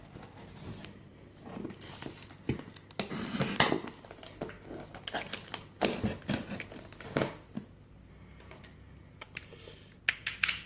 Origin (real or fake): real